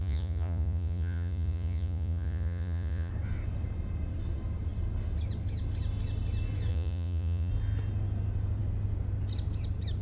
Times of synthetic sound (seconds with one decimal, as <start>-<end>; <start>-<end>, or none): 0.0-3.1; 6.7-7.5